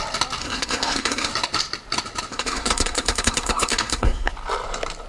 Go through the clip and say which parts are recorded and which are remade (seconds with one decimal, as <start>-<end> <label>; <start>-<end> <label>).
0.0-0.4 recorded; 0.4-1.3 remade; 1.3-2.3 recorded; 2.3-4.3 remade; 4.3-5.1 recorded